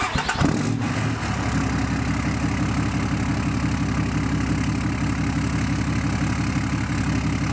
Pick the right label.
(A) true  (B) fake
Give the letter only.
A